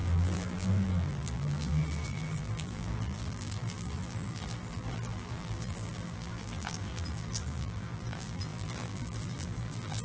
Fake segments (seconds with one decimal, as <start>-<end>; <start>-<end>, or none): 0.0-10.0